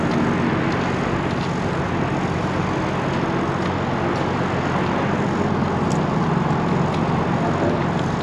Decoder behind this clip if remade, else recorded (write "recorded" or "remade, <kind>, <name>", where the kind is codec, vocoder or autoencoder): recorded